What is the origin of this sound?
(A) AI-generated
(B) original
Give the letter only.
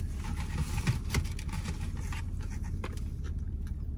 B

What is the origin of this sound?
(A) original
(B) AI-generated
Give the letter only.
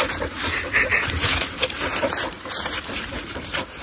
B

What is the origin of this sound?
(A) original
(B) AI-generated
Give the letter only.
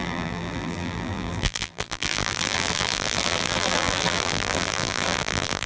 B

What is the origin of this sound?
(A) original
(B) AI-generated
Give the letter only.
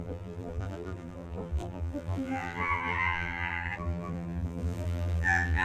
B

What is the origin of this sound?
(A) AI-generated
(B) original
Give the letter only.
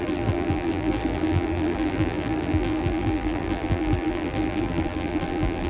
A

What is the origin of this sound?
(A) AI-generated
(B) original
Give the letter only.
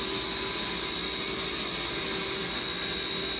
B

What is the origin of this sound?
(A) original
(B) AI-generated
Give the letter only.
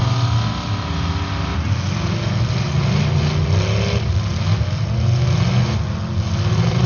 A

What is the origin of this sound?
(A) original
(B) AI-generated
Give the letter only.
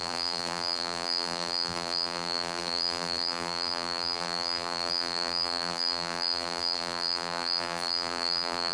B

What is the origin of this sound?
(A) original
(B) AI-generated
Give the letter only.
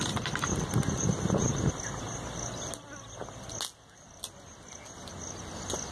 A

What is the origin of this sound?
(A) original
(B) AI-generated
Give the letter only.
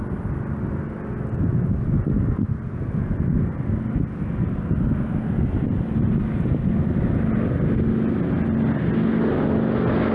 A